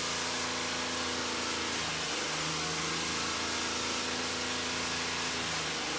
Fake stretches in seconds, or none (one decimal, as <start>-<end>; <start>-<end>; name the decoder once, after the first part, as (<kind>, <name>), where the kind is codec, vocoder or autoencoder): none